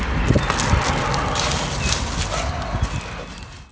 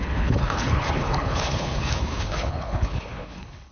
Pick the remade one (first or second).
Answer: second